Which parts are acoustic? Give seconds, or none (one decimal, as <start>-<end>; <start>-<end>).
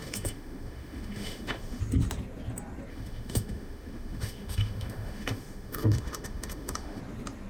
1.8-2.9; 7.0-7.5